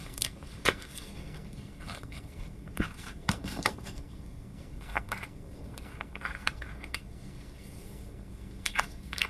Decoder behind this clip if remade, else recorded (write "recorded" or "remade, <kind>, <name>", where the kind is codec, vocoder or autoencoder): remade, codec, SNAC